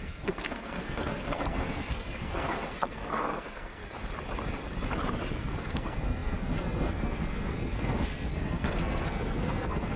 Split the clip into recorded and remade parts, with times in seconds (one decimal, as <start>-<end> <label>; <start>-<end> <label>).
0.0-3.8 remade; 3.8-5.3 recorded; 5.3-10.0 remade